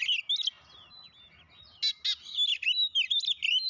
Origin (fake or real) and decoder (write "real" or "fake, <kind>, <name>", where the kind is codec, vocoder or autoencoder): real